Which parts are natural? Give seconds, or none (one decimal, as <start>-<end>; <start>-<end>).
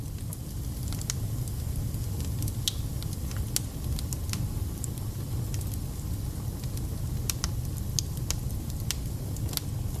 0.0-10.0